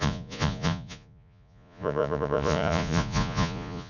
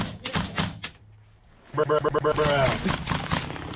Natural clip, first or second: second